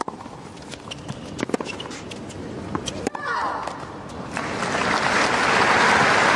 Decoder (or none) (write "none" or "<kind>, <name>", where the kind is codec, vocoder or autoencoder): none